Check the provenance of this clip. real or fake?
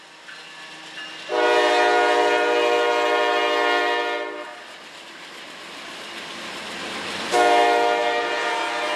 real